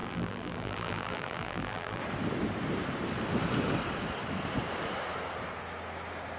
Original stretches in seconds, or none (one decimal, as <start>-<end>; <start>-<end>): 2.0-6.4